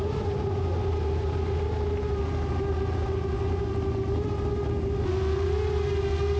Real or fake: real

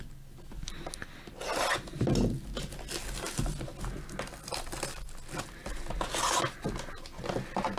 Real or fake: real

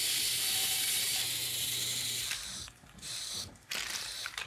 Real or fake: fake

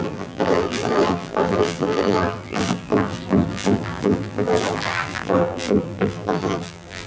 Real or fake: fake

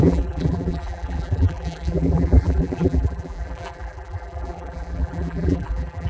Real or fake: fake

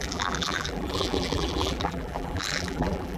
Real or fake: fake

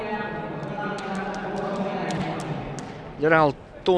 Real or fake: real